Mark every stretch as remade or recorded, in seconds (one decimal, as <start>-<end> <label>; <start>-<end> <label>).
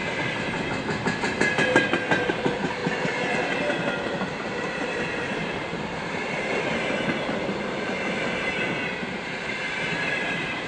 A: 0.0-2.3 recorded; 2.3-2.8 remade; 2.8-4.2 recorded; 4.2-10.7 remade